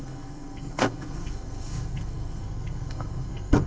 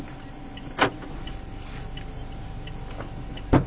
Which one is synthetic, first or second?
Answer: first